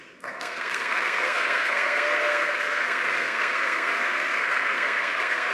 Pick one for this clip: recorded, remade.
remade